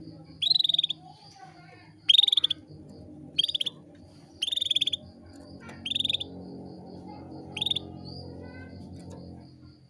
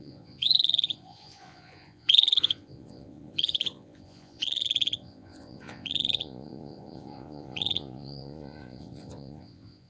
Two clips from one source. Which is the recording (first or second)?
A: first